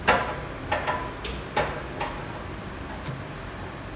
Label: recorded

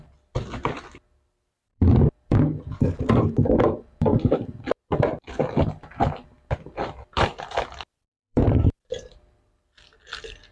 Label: remade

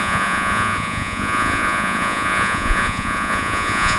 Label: remade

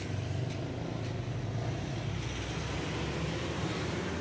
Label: recorded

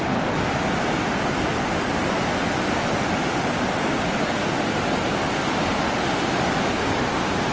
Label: recorded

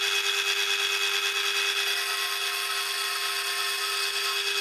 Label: recorded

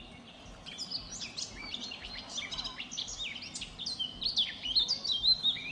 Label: recorded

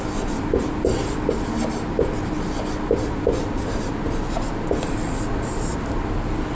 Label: recorded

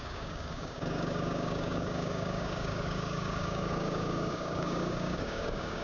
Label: remade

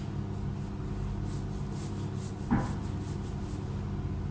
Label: recorded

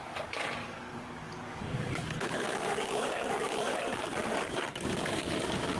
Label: remade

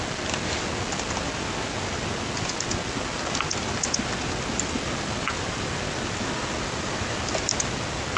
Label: recorded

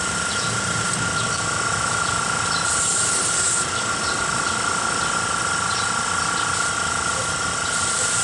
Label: recorded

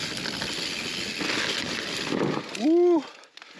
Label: recorded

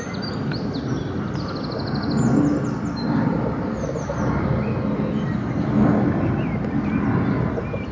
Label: recorded